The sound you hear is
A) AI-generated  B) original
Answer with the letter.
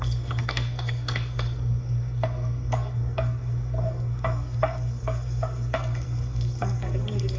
A